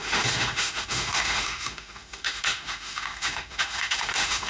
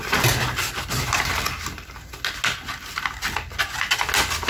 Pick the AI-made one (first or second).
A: first